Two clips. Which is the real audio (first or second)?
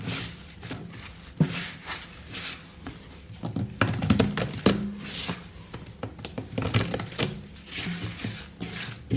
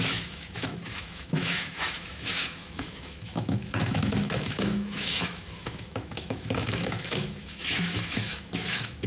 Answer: first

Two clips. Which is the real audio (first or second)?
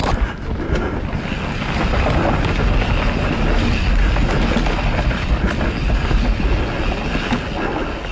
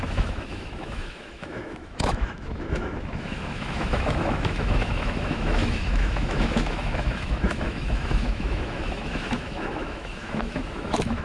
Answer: first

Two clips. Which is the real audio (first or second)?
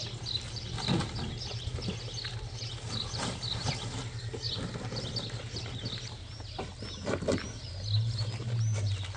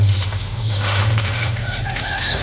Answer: first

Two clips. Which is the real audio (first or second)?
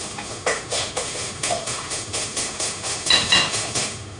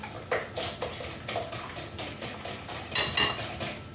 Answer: second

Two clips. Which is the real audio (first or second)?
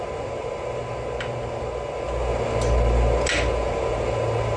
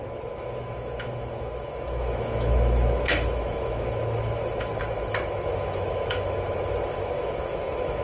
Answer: first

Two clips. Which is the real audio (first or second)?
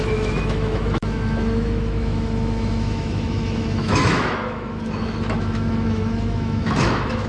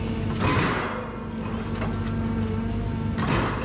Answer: second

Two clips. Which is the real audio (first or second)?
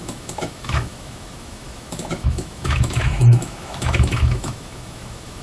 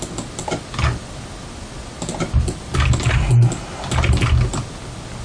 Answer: second